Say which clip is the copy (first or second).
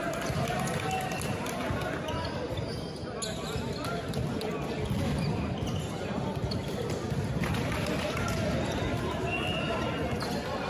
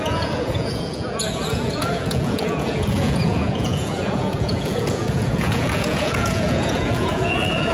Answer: second